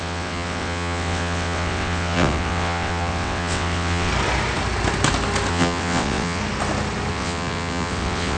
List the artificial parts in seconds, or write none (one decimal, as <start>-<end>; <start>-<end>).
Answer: 0.0-4.1; 5.5-6.4; 7.1-8.4